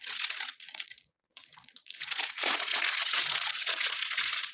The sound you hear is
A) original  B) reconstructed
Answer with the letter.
B